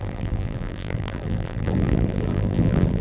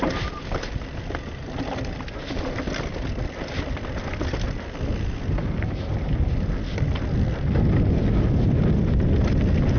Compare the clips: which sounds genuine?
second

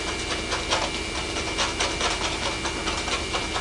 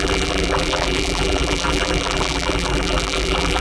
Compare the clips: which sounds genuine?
first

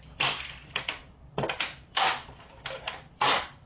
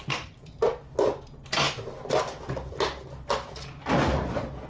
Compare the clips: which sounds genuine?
second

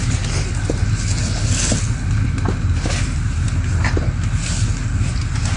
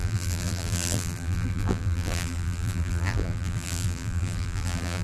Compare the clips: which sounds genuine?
first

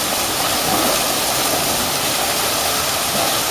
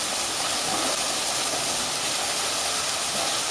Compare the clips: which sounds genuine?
second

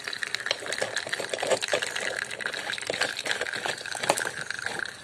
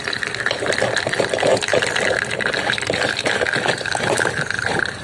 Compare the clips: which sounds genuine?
first